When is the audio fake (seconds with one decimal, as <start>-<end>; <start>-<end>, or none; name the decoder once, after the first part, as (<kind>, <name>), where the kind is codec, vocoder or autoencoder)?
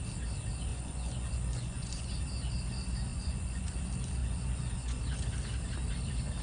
0.7-2.1 (vocoder, Vocos); 3.1-3.8; 4.2-5.0